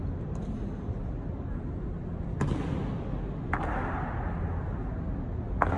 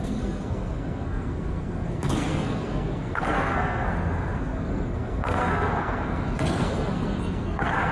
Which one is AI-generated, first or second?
second